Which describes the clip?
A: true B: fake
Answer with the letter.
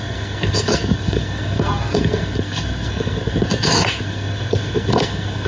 B